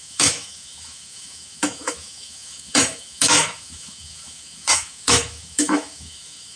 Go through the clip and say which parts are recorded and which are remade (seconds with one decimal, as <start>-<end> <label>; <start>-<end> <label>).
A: 0.0-6.6 remade